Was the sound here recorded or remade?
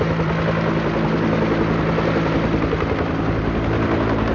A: recorded